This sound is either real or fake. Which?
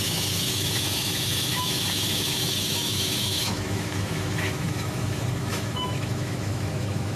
fake